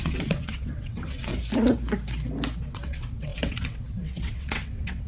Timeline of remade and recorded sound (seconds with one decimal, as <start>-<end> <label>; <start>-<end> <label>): 0.0-1.3 remade; 1.3-2.6 recorded; 2.6-5.1 remade